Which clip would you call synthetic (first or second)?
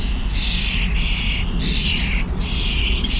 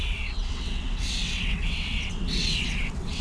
second